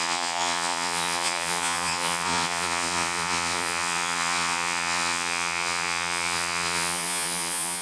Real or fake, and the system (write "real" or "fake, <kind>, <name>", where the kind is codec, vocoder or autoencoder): fake, vocoder, Vocos